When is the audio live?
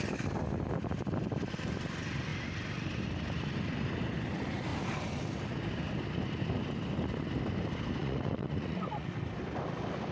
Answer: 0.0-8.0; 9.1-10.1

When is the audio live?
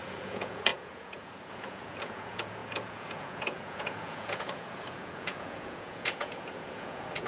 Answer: none